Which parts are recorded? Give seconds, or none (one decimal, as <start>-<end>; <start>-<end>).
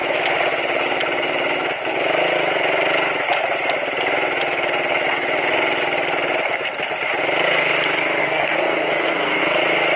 0.0-8.2; 9.4-10.0